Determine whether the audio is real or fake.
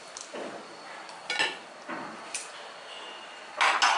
real